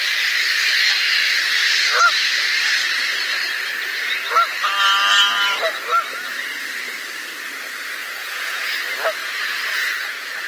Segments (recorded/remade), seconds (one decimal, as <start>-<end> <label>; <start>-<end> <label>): 0.0-8.0 recorded; 8.0-8.7 remade; 8.7-9.2 recorded; 9.2-10.5 remade